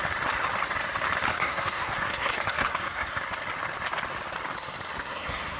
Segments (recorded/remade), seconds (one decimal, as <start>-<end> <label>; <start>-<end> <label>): 0.0-1.3 recorded; 1.3-3.2 remade; 3.2-5.0 recorded; 5.0-5.6 remade